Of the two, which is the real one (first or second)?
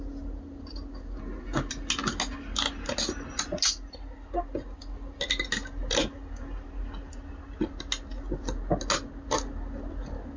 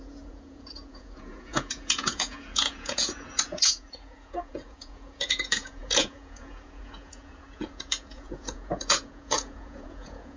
first